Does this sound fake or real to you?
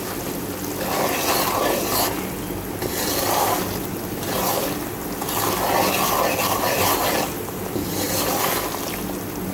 real